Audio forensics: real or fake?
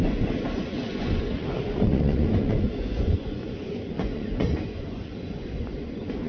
fake